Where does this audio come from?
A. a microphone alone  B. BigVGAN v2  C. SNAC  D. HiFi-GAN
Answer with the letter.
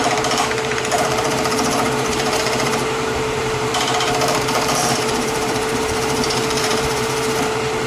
B